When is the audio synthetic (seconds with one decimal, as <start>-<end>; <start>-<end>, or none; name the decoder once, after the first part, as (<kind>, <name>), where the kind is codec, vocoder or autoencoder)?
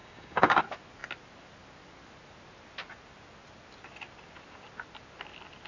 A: 0.0-0.6 (codec, DAC)